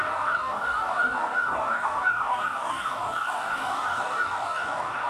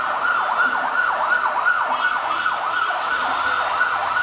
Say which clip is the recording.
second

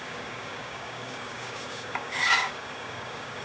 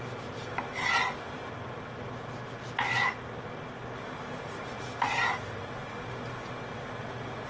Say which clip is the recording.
second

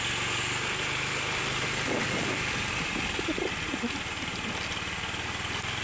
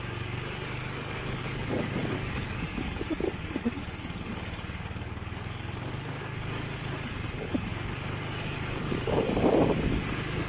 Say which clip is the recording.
first